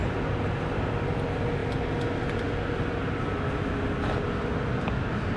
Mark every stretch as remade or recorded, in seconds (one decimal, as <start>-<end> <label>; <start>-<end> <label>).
0.0-5.4 recorded

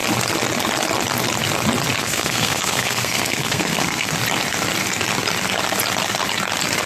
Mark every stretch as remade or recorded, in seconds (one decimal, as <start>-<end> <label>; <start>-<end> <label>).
0.0-2.0 recorded; 2.0-4.1 remade; 4.1-6.9 recorded

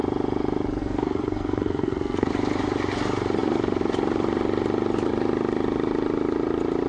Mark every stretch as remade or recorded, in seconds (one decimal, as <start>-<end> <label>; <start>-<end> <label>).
0.0-0.8 recorded; 0.8-2.3 remade; 2.3-6.9 recorded

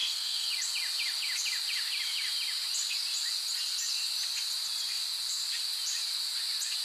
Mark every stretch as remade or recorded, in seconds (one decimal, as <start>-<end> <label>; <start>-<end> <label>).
0.0-0.5 remade; 0.5-6.8 recorded

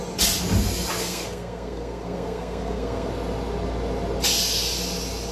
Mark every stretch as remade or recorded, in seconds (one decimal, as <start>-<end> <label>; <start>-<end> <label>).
0.0-1.0 recorded; 1.0-3.1 remade; 3.1-5.3 recorded

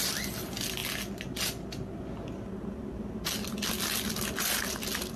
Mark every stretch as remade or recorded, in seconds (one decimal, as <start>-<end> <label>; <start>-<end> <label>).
0.0-5.2 recorded